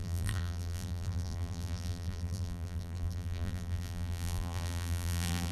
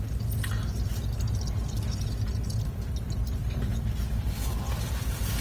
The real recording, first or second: second